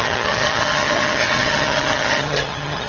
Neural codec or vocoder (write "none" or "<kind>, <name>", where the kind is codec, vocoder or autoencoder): vocoder, HiFi-GAN